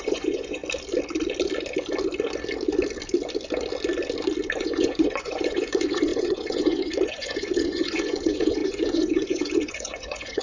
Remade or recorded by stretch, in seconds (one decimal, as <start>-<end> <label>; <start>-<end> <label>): 0.0-0.6 remade; 0.6-4.6 recorded; 4.6-10.4 remade